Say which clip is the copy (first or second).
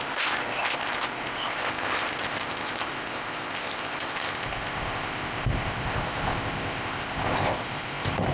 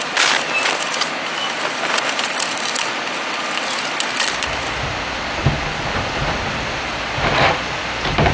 first